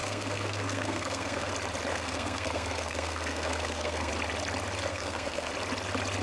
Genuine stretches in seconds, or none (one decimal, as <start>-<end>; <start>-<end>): 1.5-1.9; 4.1-4.9; 5.5-6.2

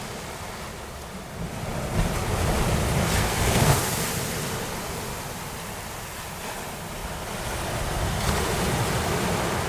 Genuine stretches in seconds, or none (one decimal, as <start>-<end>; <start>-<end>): 0.0-3.0; 4.1-9.7

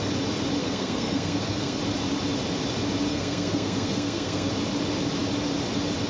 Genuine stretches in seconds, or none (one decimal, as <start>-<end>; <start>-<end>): 0.0-0.6; 1.8-3.1; 4.5-6.1

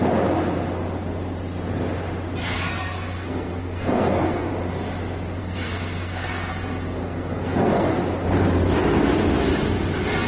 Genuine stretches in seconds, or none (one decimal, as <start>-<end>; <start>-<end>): 0.0-2.4; 4.5-5.4; 6.5-7.0; 7.9-10.3

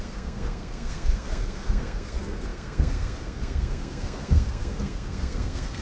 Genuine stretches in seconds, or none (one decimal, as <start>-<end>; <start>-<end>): none